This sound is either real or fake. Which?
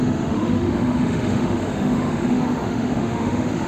fake